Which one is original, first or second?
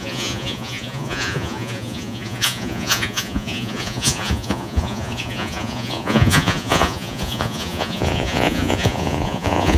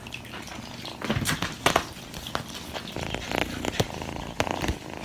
second